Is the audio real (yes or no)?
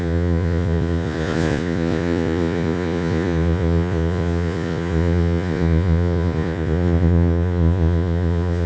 no